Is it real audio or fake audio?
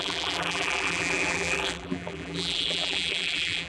fake